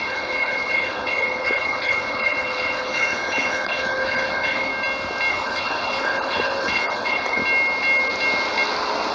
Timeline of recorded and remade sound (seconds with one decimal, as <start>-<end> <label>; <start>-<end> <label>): 0.0-4.7 remade; 4.7-5.3 recorded; 5.3-7.4 remade; 7.4-9.1 recorded